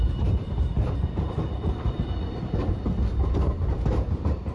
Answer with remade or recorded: remade